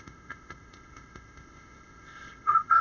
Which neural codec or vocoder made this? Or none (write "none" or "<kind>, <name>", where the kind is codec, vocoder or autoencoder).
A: codec, ZipCodec